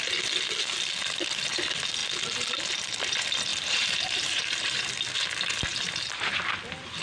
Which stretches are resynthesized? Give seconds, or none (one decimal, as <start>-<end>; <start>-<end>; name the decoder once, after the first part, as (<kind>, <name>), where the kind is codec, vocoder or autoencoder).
3.5-4.9 (vocoder, BigVGAN v2); 5.7-6.6